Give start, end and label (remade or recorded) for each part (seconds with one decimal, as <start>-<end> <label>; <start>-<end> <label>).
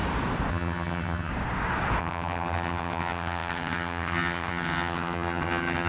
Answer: 0.0-0.5 recorded; 0.5-1.3 remade; 1.3-2.0 recorded; 2.0-5.9 remade